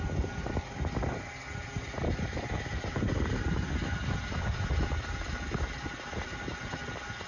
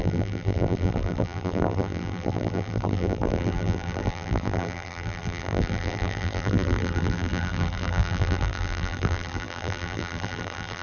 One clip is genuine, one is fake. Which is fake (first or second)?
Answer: second